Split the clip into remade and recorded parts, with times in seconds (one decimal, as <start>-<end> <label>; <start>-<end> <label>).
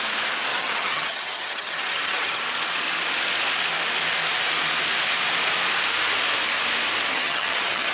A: 0.0-0.5 recorded; 0.5-2.4 remade; 2.4-7.1 recorded; 7.1-7.9 remade